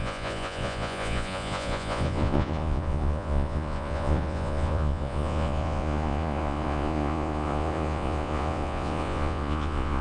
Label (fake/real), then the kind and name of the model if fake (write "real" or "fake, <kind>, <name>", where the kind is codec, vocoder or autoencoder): fake, vocoder, Vocos